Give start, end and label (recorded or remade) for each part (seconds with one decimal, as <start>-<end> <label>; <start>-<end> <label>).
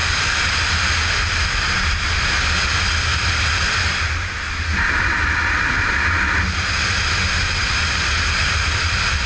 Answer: 0.0-9.3 recorded